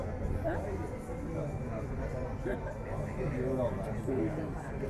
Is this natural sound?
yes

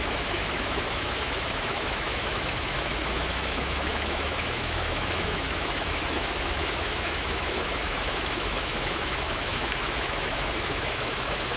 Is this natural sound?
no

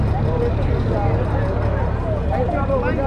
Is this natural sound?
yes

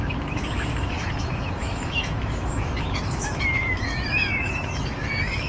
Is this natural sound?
no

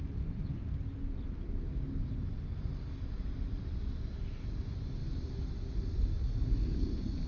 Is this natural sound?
yes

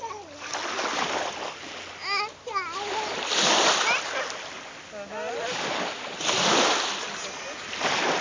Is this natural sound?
yes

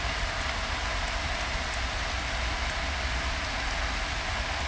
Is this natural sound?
yes